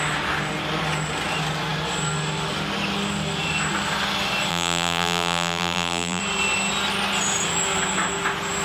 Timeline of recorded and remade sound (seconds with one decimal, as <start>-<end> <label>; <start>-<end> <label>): 0.0-4.5 recorded; 4.5-6.2 remade; 6.2-8.6 recorded